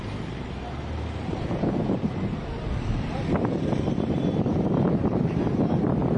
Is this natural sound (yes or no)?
no